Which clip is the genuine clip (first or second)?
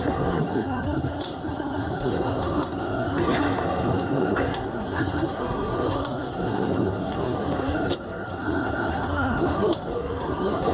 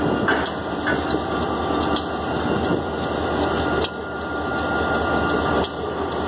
second